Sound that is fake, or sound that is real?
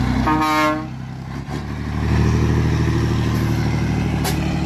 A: real